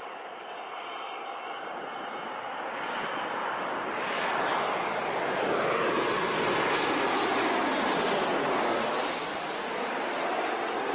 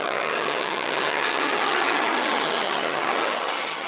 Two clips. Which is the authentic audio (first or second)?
first